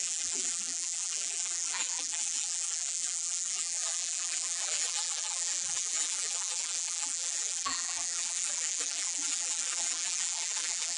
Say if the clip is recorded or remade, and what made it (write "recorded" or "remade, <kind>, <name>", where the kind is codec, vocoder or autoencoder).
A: remade, vocoder, BigVGAN v2